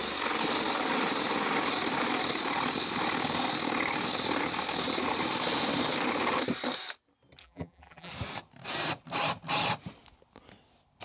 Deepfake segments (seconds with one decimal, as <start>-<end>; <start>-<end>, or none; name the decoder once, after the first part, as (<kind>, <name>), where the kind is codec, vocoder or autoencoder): 7.4-8.1 (vocoder, BigVGAN v2)